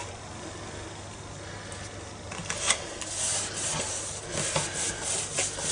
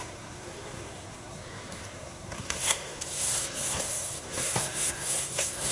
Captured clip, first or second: first